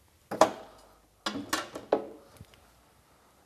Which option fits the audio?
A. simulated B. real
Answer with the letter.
B